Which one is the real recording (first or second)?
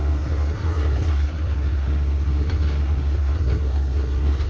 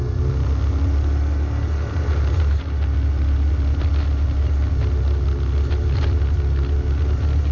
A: second